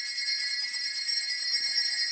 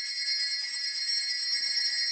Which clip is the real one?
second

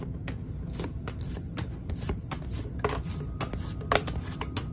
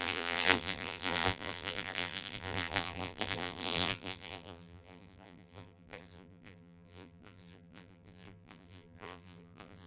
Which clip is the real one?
first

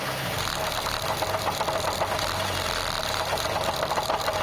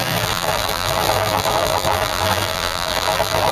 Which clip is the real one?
first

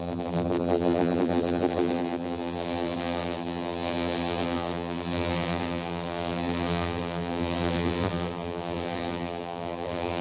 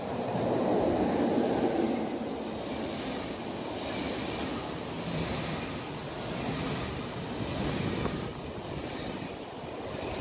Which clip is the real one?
second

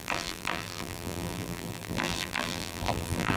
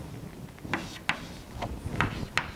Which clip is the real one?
second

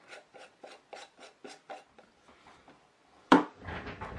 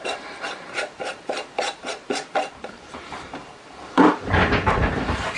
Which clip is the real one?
first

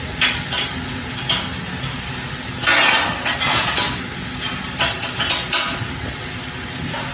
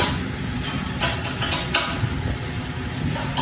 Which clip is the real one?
first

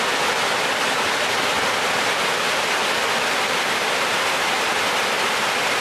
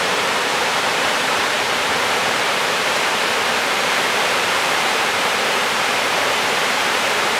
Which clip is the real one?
first